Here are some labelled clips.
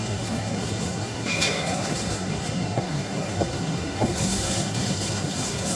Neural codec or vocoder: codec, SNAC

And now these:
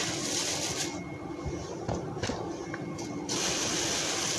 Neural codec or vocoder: none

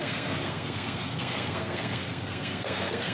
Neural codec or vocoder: codec, SNAC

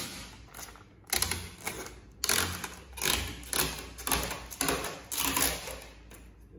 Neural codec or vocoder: none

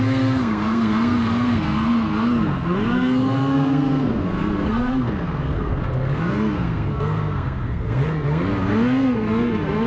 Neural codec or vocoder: codec, SNAC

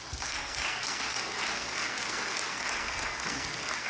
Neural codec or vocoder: codec, SNAC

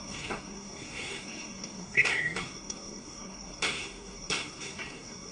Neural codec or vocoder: codec, SNAC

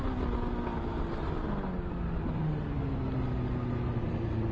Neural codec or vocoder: none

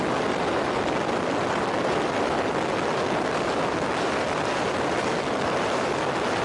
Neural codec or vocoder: none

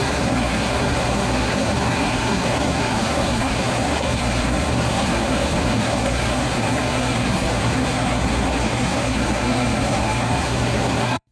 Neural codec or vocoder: codec, SNAC